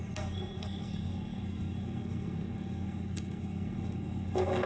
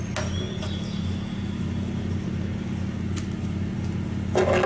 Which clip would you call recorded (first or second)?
second